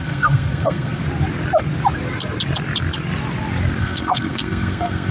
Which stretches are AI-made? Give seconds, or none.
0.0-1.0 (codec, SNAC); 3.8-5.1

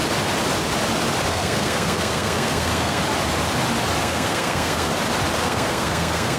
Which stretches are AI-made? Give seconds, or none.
1.3-3.0 (codec, SNAC); 4.0-4.9; 5.4-6.4

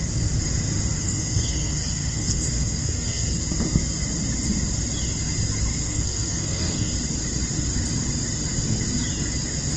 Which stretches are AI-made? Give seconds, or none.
1.0-3.4 (codec, SNAC); 5.8-6.9